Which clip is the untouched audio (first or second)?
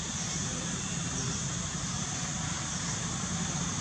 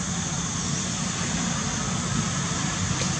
second